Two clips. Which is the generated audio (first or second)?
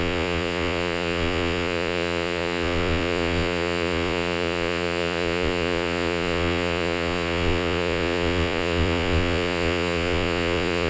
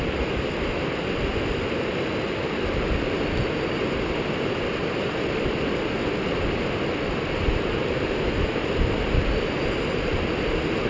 first